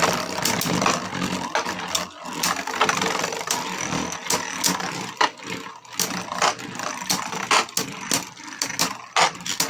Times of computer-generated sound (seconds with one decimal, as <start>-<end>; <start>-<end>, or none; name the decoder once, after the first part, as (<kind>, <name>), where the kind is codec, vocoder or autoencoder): none